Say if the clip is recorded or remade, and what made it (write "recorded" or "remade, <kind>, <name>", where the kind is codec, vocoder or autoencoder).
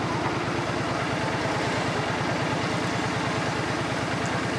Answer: recorded